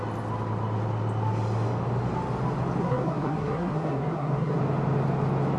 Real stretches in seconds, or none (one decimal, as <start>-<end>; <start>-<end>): 0.0-2.8; 4.6-5.6